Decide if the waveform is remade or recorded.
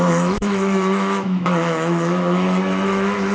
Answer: remade